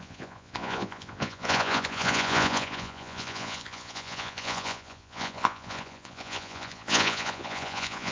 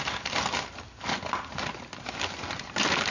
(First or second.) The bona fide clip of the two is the second